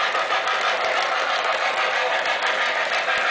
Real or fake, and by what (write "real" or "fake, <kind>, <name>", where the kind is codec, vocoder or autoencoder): real